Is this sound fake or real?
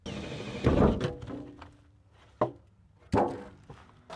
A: real